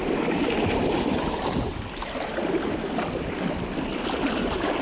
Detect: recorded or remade recorded